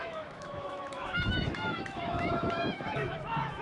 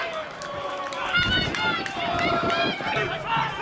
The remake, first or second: first